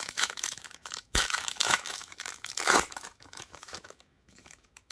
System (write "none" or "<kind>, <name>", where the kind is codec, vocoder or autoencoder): autoencoder, DAC-VAE